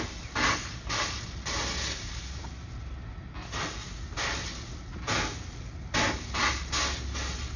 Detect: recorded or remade recorded